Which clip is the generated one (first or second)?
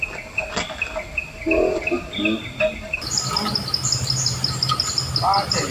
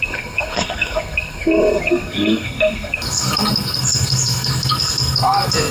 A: second